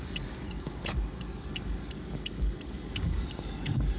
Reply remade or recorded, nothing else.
remade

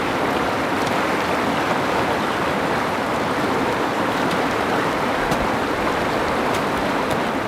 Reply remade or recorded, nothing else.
recorded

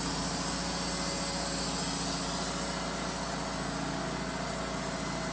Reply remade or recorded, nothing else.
recorded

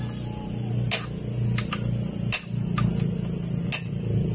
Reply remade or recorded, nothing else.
recorded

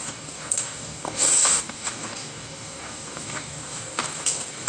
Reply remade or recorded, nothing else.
remade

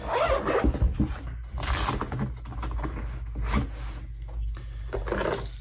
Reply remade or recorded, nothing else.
recorded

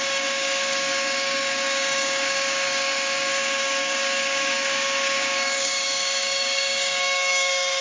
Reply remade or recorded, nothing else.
remade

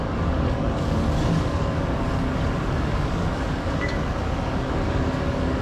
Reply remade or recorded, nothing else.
remade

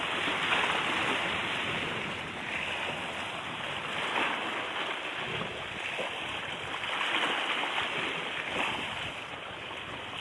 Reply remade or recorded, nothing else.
recorded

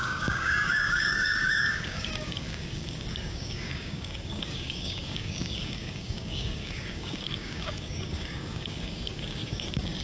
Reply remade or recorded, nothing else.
remade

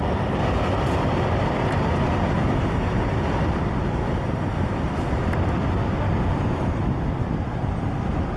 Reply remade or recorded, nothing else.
recorded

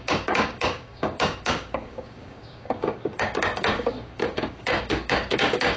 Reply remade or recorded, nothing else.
remade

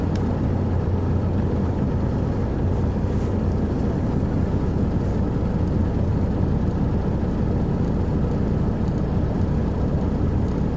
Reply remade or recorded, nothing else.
recorded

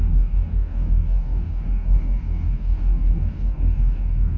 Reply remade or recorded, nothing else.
remade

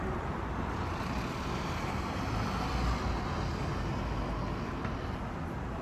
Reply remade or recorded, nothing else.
recorded